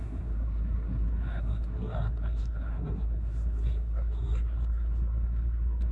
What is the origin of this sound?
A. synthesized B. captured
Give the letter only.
A